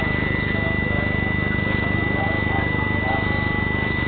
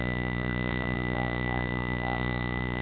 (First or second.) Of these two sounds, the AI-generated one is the second